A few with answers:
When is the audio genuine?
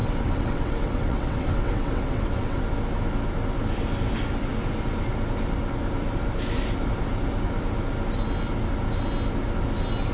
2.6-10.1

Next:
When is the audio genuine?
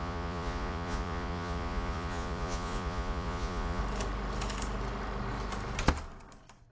3.8-6.7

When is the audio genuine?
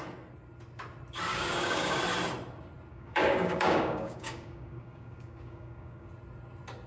0.0-1.3; 2.0-2.9; 6.1-6.9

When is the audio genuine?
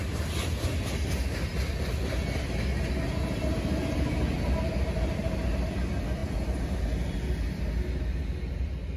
0.0-9.0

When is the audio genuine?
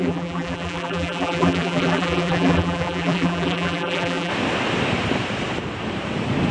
4.3-6.5